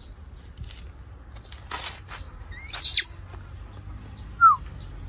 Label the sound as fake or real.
real